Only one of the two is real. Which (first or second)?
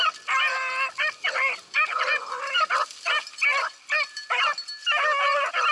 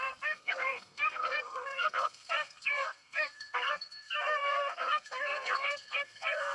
first